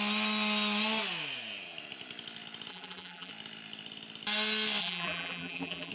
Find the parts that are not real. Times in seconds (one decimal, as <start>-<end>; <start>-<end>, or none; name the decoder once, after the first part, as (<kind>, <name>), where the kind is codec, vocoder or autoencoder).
2.7-3.3 (vocoder, BigVGAN v2); 4.8-5.9